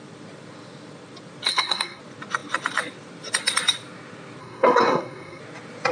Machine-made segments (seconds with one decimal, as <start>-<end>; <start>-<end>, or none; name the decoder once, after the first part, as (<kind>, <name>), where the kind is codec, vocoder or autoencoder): 1.5-2.0 (codec, SNAC); 4.4-5.4